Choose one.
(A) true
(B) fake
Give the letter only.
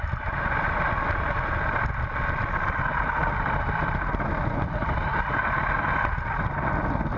A